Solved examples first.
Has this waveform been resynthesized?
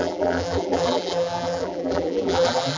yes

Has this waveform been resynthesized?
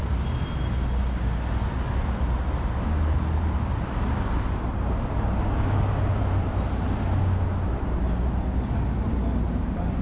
no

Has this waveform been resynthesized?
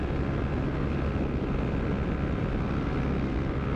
no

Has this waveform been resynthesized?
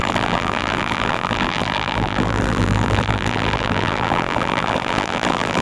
yes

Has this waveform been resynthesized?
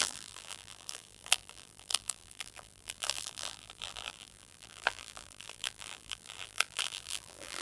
yes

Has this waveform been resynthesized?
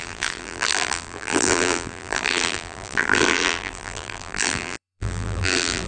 yes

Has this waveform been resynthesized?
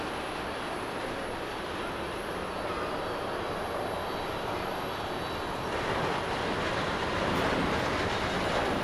no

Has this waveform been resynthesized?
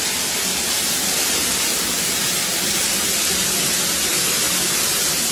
no